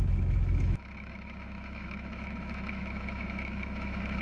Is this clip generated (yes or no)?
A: yes